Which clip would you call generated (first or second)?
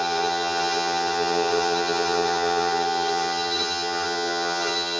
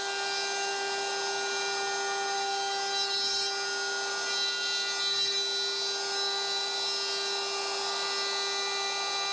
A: first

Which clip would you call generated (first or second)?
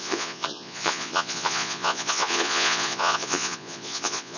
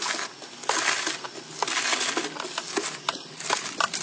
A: first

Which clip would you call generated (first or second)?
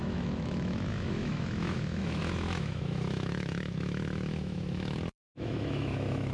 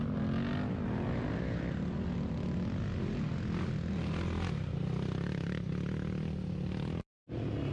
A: first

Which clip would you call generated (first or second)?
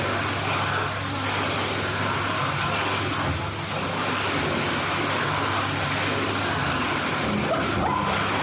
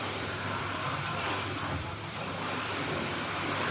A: second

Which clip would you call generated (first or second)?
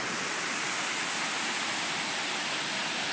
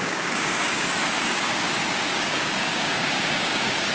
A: second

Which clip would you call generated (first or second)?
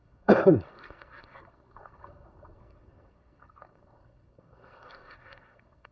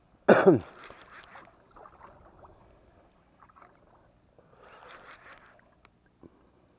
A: first